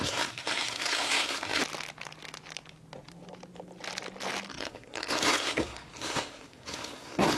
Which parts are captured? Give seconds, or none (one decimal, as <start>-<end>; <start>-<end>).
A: 1.6-4.5